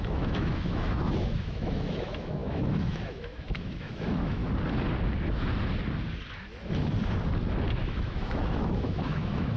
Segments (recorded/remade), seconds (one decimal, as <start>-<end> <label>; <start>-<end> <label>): 0.0-4.4 remade; 4.4-7.8 recorded; 7.8-9.6 remade